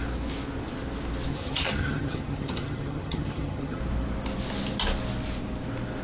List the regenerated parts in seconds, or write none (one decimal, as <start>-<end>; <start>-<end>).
1.3-3.8